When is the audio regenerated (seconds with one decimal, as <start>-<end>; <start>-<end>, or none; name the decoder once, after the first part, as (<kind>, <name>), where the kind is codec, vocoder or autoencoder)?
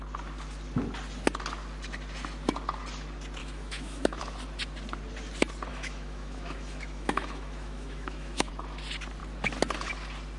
3.4-4.2 (autoencoder, DAC-VAE); 5.7-8.5